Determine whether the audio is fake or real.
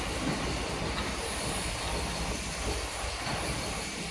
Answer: real